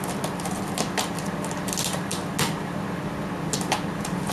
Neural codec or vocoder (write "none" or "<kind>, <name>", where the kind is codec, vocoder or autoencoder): none